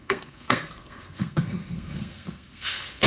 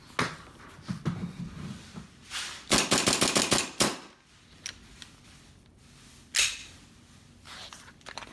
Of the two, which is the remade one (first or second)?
first